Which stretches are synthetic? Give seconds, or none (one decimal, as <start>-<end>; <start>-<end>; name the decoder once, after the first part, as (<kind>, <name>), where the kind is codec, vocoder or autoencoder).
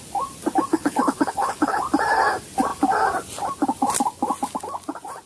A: 0.7-1.8 (codec, HILCodec)